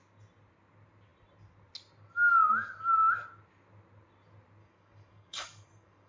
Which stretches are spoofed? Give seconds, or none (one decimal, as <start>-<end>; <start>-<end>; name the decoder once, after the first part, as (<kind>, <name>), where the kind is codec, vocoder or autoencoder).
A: 4.6-6.1 (codec, DAC)